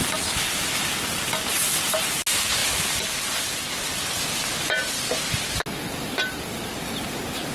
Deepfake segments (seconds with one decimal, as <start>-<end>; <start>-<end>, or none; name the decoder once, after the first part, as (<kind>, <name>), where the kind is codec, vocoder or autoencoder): none